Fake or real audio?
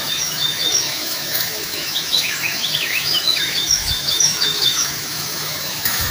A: fake